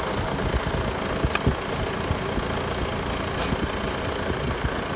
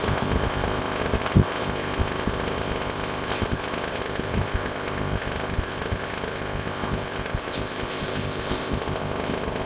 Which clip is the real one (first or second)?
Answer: first